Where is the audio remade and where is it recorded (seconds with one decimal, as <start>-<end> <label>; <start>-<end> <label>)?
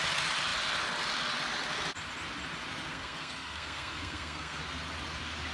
0.0-2.9 recorded; 2.9-4.6 remade; 4.6-5.5 recorded